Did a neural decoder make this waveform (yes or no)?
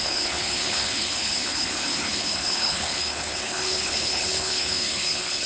yes